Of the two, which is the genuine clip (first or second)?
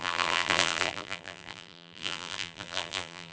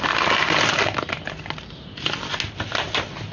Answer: second